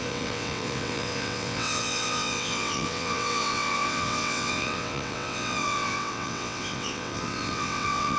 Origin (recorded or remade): remade